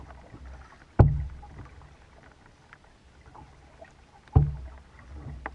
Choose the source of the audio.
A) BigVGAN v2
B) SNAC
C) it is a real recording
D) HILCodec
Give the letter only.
C